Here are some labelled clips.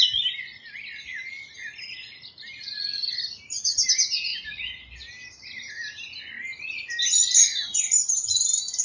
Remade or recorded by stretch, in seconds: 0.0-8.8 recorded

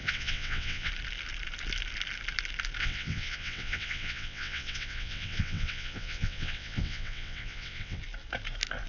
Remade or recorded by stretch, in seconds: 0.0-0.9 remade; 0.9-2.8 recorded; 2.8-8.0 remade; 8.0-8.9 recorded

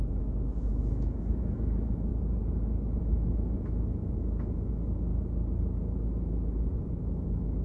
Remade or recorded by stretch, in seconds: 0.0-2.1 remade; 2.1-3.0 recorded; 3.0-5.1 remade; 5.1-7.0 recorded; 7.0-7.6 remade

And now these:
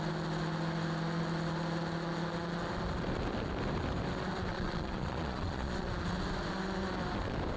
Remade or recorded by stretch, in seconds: 0.0-4.5 recorded; 4.5-5.9 remade; 5.9-7.6 recorded

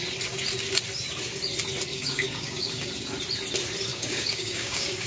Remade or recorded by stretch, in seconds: 0.0-1.9 recorded; 1.9-2.9 remade; 2.9-3.9 recorded; 3.9-5.1 remade

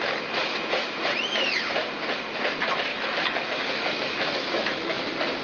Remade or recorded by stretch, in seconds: 0.0-0.4 recorded; 0.4-1.0 remade; 1.0-2.9 recorded; 2.9-5.0 remade; 5.0-5.4 recorded